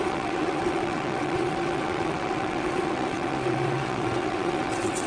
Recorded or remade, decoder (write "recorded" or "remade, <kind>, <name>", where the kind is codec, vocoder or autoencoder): remade, vocoder, WaveNeXt